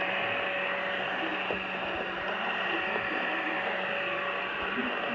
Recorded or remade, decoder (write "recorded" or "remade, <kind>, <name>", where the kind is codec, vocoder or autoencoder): recorded